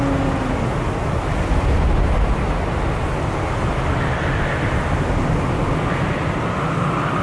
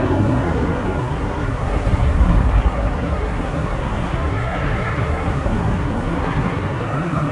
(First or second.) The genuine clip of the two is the first